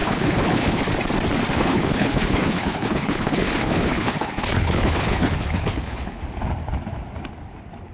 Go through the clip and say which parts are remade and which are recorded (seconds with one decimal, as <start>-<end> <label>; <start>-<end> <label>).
0.0-0.8 remade; 0.8-1.5 recorded; 1.5-6.2 remade; 6.2-7.9 recorded